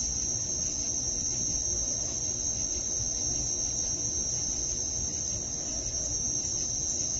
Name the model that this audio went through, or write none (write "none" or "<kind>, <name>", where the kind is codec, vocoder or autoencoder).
none